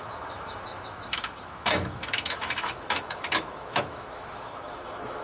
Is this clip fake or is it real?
fake